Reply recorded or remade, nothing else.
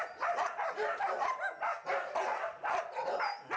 recorded